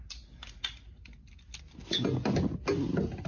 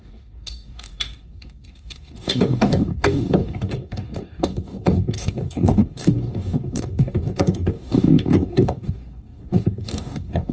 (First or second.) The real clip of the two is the first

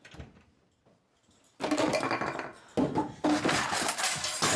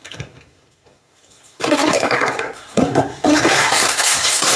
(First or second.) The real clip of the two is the first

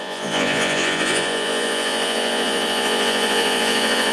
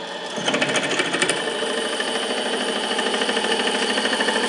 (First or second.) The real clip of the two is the second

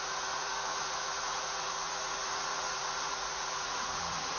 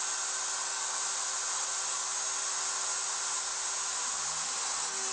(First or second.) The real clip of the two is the second